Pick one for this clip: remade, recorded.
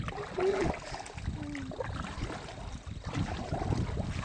recorded